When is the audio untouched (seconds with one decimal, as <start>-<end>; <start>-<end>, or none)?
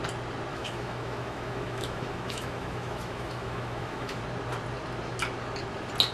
0.0-0.5; 4.2-6.1